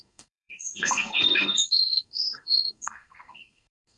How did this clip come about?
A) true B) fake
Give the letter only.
B